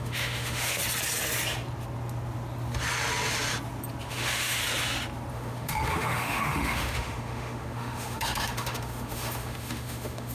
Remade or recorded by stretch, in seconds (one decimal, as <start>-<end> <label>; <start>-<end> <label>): 0.0-0.8 remade; 0.8-4.1 recorded; 4.1-4.6 remade; 4.6-5.3 recorded; 5.3-10.3 remade